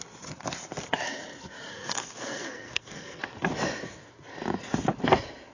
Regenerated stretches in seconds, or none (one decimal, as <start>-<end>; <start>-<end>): 1.7-3.2